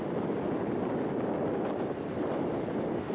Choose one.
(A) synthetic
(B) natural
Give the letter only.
B